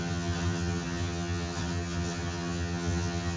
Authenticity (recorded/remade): remade